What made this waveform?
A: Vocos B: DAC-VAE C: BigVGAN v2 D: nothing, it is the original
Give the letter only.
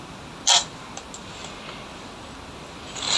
D